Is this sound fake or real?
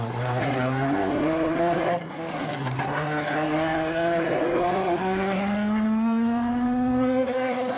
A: fake